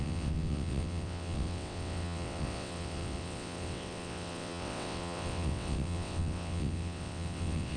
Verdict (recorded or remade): remade